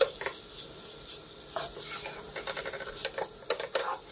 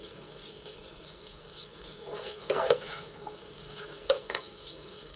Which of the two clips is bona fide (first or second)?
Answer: first